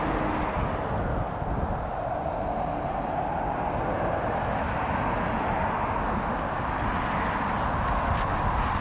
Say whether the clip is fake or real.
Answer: real